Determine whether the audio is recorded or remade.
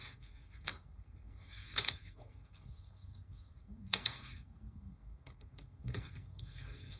remade